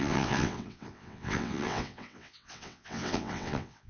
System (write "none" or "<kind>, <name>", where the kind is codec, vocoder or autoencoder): vocoder, WaveNeXt